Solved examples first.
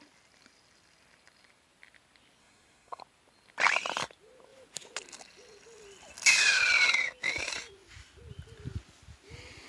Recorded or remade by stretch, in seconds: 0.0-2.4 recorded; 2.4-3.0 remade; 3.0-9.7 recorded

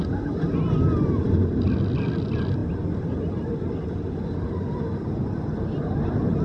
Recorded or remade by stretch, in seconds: 0.0-6.4 recorded

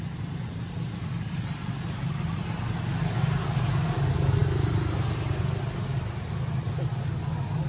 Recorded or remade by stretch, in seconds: 0.0-1.6 recorded; 1.6-2.4 remade; 2.4-7.7 recorded

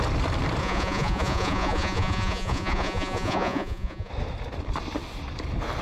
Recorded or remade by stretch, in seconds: 0.0-0.6 recorded; 0.6-4.1 remade; 4.1-5.8 recorded

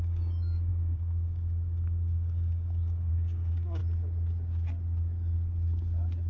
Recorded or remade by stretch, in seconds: 0.0-3.8 remade; 3.8-6.3 recorded